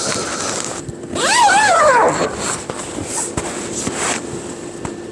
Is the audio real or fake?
real